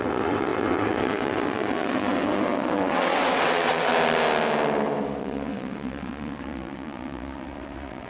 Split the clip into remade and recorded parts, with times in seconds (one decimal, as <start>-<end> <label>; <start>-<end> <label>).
0.0-3.9 remade; 3.9-5.2 recorded; 5.2-8.1 remade